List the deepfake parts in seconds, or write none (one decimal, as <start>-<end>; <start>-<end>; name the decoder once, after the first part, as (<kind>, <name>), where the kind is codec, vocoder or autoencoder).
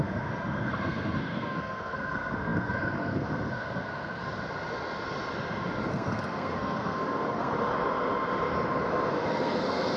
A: 0.0-4.2 (codec, SNAC); 5.9-7.5; 9.1-10.0